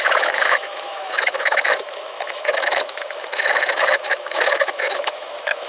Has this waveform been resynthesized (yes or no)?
yes